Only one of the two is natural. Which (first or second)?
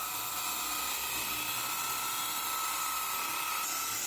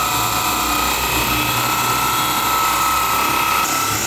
second